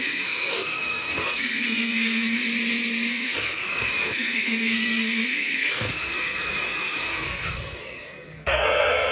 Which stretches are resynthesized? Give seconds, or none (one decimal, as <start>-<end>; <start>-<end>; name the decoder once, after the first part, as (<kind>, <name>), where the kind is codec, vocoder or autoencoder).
0.0-2.4 (codec, SNAC); 3.1-9.1